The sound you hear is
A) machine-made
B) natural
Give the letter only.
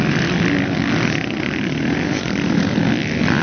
B